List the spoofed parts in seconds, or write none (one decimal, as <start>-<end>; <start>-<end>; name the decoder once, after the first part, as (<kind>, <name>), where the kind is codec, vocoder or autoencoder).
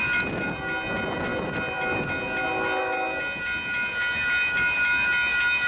none